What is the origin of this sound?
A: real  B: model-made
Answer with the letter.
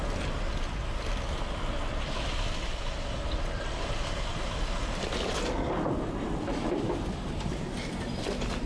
A